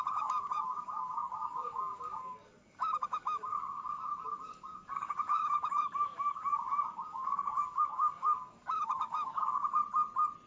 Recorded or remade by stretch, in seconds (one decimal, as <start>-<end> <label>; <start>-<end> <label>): 0.0-9.8 remade; 9.8-10.5 recorded